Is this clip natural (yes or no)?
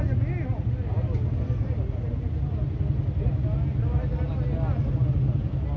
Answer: yes